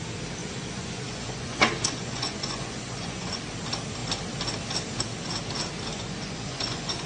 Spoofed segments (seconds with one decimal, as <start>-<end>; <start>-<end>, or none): 0.4-3.4; 5.9-7.1